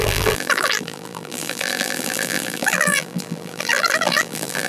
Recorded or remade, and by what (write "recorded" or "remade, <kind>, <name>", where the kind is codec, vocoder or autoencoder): remade, vocoder, BigVGAN v2